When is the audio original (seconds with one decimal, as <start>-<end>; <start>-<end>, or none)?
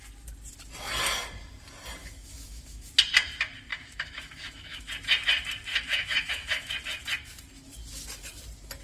0.0-2.0; 2.9-3.7; 4.9-5.7; 6.7-8.8